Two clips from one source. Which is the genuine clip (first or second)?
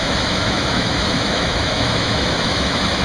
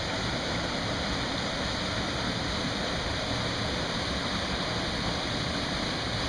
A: second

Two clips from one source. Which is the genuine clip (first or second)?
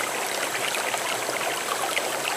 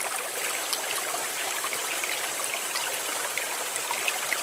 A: second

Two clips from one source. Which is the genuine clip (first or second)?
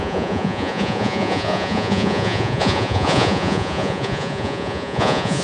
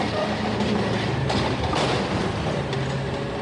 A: second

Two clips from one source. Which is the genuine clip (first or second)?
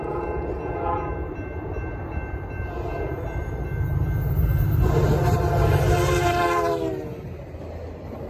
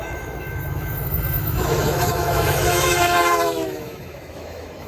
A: first